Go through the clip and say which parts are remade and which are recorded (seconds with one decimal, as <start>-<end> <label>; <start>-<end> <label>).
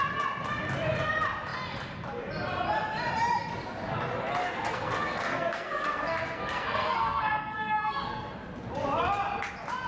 0.0-4.4 recorded; 4.4-8.4 remade; 8.4-9.9 recorded